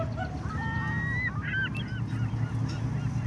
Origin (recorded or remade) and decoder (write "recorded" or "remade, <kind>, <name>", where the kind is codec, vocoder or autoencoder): recorded